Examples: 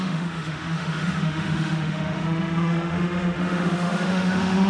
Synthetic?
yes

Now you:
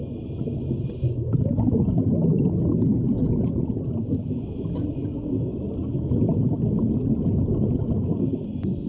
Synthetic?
no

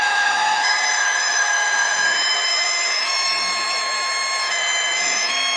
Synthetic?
yes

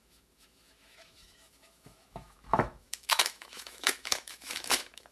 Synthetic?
yes